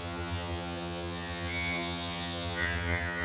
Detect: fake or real fake